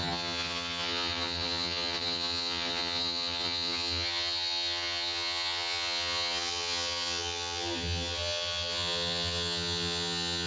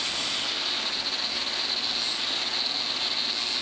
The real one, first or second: second